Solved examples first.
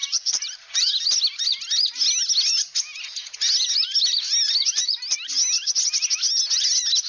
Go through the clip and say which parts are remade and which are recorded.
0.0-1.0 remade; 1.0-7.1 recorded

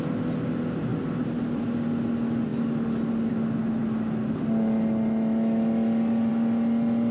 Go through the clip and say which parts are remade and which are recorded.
0.0-7.1 recorded

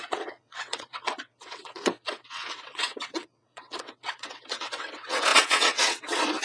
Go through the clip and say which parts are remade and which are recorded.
0.0-6.4 remade

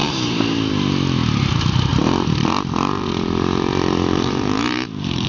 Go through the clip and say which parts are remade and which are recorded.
0.0-0.7 remade; 0.7-1.9 recorded; 1.9-5.3 remade

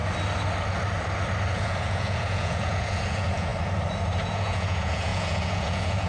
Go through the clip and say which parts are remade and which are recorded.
0.0-1.5 recorded; 1.5-3.5 remade; 3.5-4.3 recorded; 4.3-6.1 remade